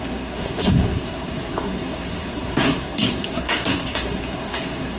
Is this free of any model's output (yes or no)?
no